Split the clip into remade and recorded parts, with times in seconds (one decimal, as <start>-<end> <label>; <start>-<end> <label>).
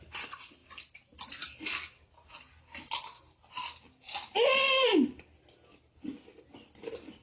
0.0-7.2 recorded